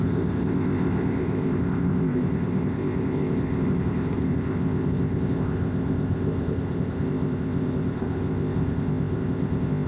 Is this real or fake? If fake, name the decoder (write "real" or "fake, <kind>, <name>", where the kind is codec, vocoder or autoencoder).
fake, codec, ZipCodec